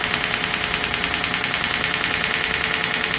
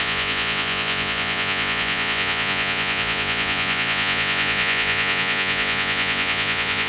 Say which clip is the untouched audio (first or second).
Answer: first